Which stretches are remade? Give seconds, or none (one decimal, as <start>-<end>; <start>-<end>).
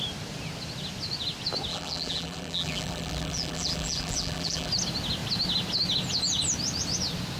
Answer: 1.7-4.7